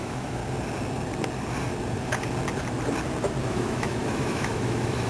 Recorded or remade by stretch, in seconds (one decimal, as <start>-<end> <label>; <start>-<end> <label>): 0.0-0.4 remade; 0.4-3.5 recorded; 3.5-5.1 remade